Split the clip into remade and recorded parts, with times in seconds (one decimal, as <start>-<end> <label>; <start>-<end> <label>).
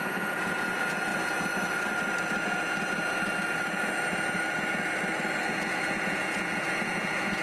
0.0-1.1 remade; 1.1-5.5 recorded; 5.5-7.4 remade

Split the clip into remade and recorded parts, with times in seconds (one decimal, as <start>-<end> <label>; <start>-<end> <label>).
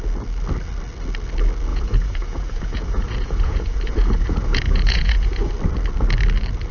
0.0-1.7 recorded; 1.7-5.5 remade; 5.5-6.7 recorded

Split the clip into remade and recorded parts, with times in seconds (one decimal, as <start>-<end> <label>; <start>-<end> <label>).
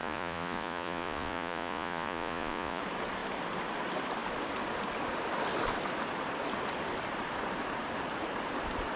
0.0-2.8 remade; 2.8-9.0 recorded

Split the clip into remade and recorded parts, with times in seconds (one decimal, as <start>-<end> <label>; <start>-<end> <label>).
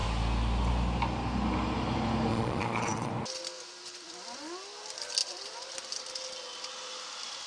0.0-2.3 recorded; 2.3-3.1 remade; 3.1-7.5 recorded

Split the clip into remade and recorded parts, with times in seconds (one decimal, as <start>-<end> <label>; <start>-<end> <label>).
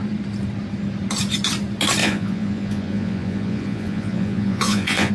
0.0-2.0 recorded; 2.0-5.1 remade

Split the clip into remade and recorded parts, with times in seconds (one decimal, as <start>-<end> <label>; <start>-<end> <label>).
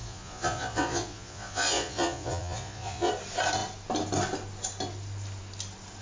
0.0-3.1 remade; 3.1-6.0 recorded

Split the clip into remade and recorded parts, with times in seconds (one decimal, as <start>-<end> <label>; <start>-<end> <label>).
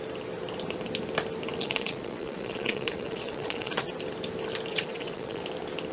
0.0-1.6 recorded; 1.6-3.9 remade; 3.9-4.7 recorded; 4.7-5.4 remade; 5.4-5.9 recorded